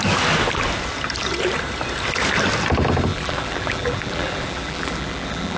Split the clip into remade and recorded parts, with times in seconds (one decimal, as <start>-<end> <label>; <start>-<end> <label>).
0.0-3.1 recorded; 3.1-5.6 remade